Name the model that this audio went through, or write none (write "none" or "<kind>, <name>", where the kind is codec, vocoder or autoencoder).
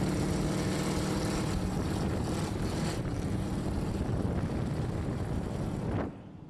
none